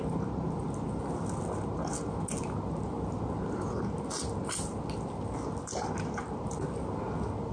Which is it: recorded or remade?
recorded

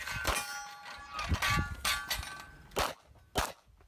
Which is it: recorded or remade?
recorded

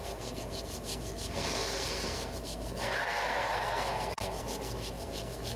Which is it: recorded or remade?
remade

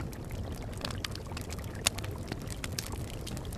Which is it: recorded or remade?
recorded